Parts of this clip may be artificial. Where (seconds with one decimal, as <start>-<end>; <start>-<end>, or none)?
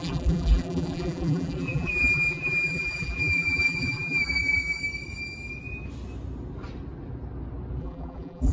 0.0-4.8; 7.8-8.5